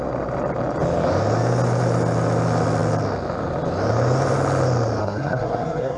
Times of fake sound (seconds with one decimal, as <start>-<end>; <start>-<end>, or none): 5.0-6.0